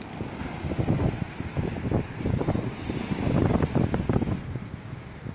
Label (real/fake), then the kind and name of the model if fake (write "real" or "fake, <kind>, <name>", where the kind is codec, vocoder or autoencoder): real